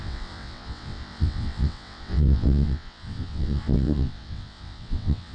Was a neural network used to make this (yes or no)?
yes